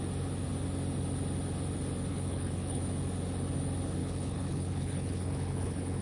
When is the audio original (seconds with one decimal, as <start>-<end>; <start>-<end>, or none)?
0.0-2.1; 2.8-4.0